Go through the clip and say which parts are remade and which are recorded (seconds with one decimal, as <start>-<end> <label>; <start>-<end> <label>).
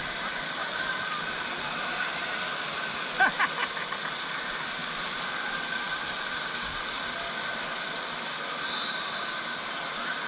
0.0-10.3 recorded